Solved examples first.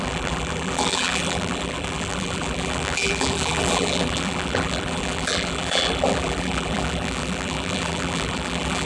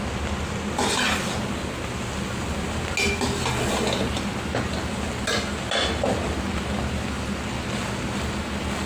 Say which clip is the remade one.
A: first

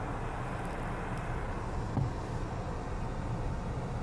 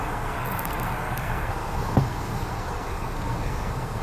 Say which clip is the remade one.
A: second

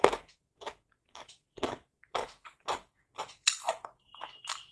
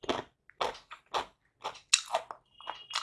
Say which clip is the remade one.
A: first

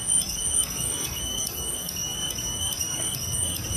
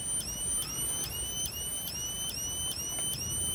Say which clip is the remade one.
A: first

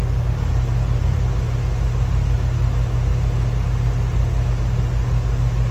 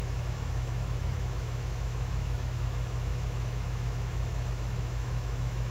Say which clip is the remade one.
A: second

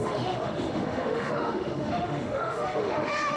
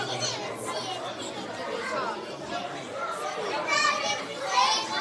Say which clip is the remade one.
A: first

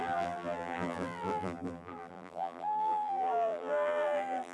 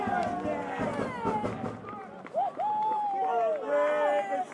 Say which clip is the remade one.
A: first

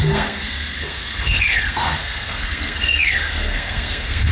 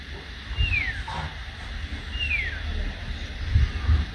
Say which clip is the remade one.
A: first